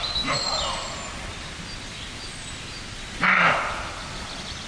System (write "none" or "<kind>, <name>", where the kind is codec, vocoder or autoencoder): none